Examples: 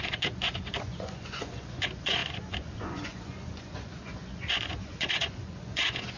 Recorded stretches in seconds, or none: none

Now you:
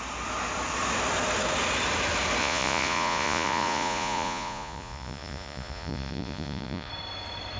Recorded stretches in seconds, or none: 0.0-2.4; 6.9-7.6

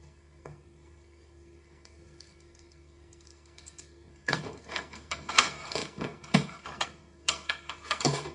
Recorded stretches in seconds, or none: none

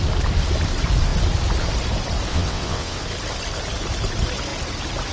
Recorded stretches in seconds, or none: 0.0-2.3; 3.0-5.1

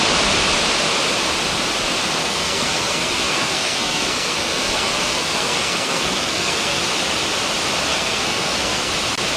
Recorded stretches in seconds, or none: 0.0-2.2; 6.8-7.9; 8.9-9.4